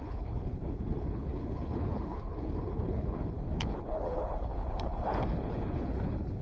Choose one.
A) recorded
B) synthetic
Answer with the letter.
B